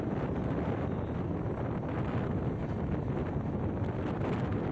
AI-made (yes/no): no